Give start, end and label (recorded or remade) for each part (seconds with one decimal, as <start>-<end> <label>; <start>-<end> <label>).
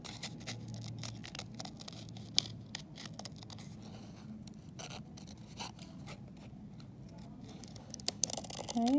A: 0.0-7.5 recorded; 7.5-8.3 remade; 8.3-9.0 recorded